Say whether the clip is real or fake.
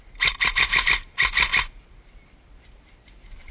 real